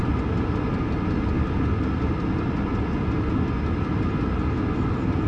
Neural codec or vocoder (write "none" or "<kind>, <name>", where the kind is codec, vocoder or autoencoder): none